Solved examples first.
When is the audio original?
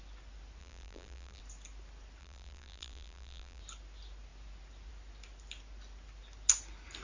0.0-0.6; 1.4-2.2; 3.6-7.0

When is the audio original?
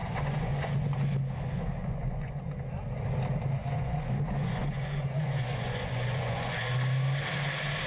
0.7-1.8; 2.4-3.6; 6.7-7.9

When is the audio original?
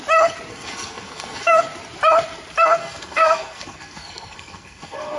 0.0-0.5; 1.6-2.8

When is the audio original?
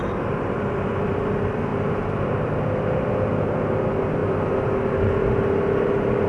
0.0-6.3